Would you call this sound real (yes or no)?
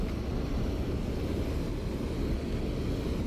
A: yes